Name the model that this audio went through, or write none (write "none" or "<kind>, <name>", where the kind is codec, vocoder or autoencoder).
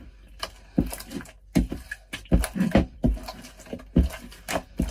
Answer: none